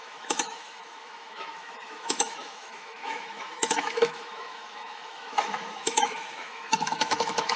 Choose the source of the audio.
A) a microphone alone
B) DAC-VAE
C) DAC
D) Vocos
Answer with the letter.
B